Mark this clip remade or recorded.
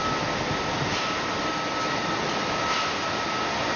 recorded